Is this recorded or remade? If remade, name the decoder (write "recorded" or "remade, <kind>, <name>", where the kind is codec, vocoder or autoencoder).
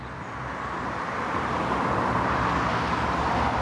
recorded